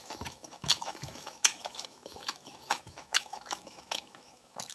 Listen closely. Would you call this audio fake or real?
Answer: fake